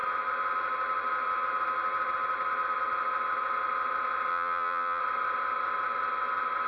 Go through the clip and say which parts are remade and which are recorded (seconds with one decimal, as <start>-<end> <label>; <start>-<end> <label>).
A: 0.0-4.3 recorded; 4.3-5.0 remade; 5.0-6.7 recorded